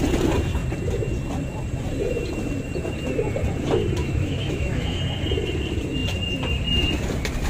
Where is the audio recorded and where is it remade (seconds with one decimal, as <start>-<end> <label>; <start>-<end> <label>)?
0.0-4.0 recorded; 4.0-5.0 remade; 5.0-7.5 recorded